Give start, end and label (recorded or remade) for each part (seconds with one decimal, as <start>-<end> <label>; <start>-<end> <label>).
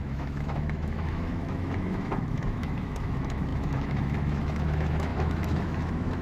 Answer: 0.0-6.2 remade